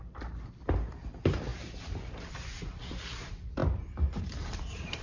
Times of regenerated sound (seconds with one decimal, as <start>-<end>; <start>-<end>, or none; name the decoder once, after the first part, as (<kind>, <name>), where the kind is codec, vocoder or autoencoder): 0.0-1.5 (vocoder, BigVGAN v2); 2.3-3.6; 4.2-5.0